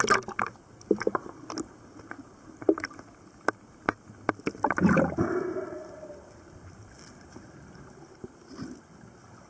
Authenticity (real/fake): real